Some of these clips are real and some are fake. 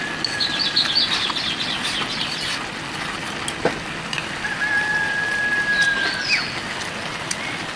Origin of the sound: real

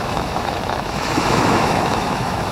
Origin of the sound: fake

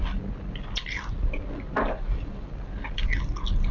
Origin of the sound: real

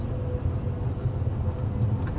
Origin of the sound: real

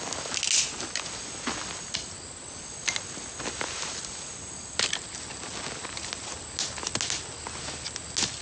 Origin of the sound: real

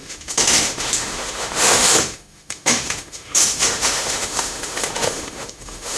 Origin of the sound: fake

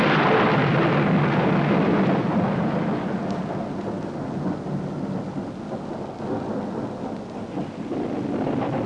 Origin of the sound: real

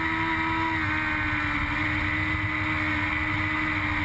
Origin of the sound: real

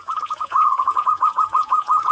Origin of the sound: fake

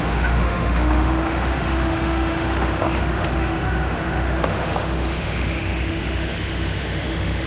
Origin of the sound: fake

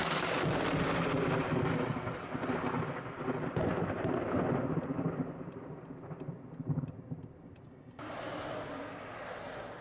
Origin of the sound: real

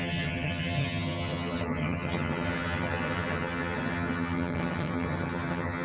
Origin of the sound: fake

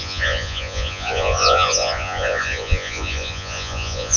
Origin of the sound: fake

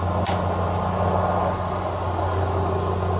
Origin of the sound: real